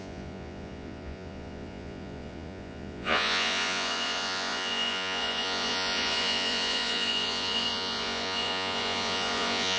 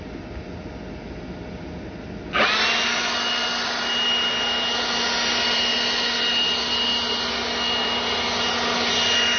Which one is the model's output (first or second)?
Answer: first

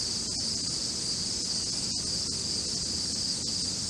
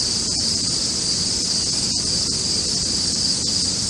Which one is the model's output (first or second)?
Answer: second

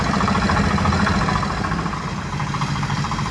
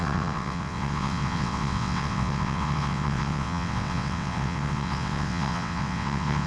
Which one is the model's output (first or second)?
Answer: second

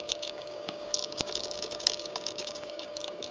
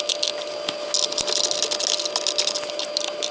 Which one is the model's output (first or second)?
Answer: first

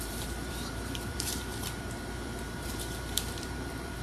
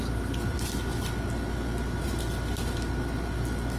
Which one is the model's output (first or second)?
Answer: first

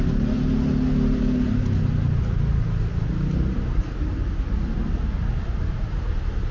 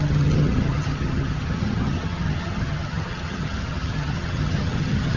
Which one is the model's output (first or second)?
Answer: second